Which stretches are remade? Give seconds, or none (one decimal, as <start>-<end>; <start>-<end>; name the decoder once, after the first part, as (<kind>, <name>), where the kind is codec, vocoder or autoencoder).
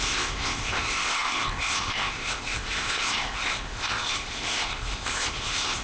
0.0-5.8 (codec, ZipCodec)